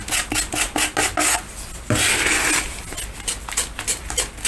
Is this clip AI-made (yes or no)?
no